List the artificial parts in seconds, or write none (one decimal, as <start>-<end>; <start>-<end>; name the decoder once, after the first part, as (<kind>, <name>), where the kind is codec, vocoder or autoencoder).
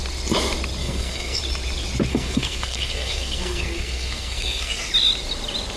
0.8-1.4 (codec, SNAC); 2.1-4.9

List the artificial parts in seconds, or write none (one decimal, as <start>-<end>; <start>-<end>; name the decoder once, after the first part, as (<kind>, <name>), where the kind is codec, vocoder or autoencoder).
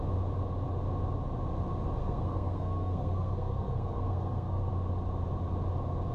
2.0-4.7 (codec, SNAC)